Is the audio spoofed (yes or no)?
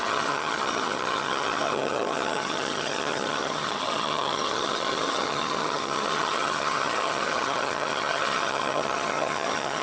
yes